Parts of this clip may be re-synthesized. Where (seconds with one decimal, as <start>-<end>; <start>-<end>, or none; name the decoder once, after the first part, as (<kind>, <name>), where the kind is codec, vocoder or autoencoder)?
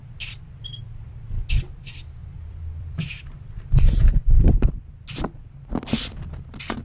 2.2-3.1 (vocoder, BigVGAN v2)